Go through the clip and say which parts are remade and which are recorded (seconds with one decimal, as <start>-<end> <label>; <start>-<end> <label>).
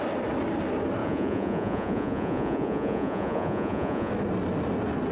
0.0-1.0 recorded; 1.0-4.1 remade; 4.1-5.1 recorded